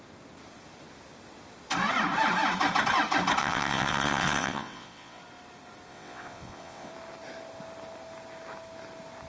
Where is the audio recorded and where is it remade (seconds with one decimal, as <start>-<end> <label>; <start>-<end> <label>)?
0.0-3.4 recorded; 3.4-5.2 remade; 5.2-5.9 recorded; 5.9-6.9 remade; 6.9-9.3 recorded